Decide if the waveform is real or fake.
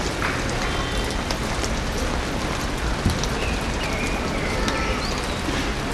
real